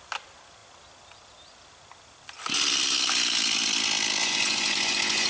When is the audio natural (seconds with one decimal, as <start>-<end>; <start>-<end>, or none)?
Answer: 0.0-4.2